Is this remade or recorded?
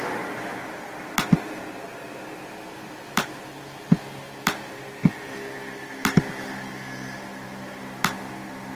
recorded